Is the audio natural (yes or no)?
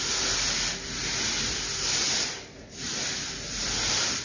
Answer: yes